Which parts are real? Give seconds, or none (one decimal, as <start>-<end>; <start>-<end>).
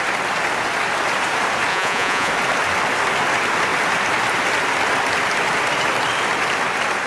0.0-1.7; 2.3-7.1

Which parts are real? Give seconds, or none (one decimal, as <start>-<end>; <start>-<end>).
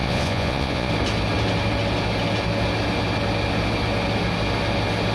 0.9-5.1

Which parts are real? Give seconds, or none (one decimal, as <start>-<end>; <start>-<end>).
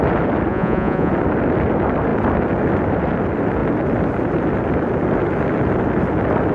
0.0-0.5; 1.1-6.5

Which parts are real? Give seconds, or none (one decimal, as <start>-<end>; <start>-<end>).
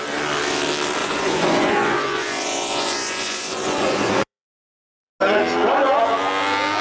0.0-1.0; 5.1-6.8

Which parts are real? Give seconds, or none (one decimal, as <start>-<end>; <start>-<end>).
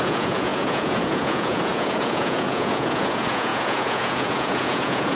none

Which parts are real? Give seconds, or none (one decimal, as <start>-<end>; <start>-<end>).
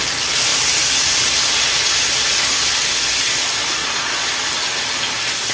0.0-3.8; 4.3-5.5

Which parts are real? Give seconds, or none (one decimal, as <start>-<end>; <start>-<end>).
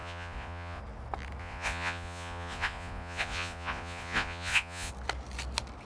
0.8-1.4; 4.9-5.9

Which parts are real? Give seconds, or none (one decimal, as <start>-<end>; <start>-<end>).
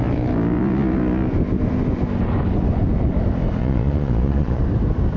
0.0-3.6; 4.6-5.2